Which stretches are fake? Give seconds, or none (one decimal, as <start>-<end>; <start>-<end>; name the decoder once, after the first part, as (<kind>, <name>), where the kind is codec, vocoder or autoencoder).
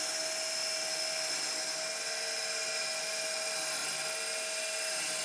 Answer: none